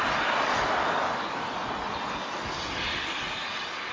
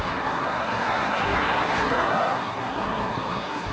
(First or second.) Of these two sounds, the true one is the first